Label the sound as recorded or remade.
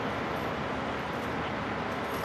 recorded